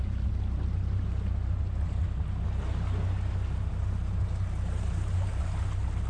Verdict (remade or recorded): recorded